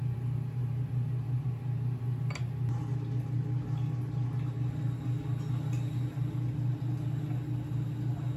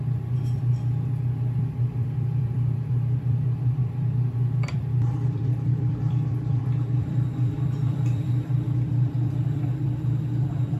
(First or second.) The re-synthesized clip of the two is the second